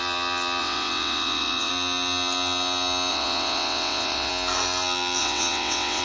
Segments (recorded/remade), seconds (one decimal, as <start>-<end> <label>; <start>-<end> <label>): 0.0-0.6 recorded; 0.6-1.7 remade; 1.7-3.1 recorded; 3.1-4.3 remade; 4.3-5.2 recorded; 5.2-6.0 remade